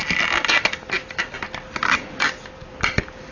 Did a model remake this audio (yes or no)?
no